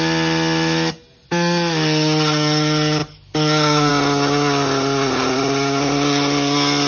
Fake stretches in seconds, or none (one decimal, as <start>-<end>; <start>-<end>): none

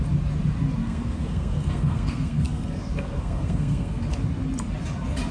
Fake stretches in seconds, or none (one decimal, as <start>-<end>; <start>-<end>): 0.8-4.0

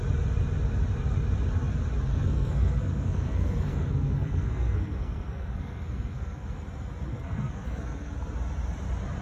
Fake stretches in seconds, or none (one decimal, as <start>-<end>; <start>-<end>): 2.1-6.6; 7.1-8.1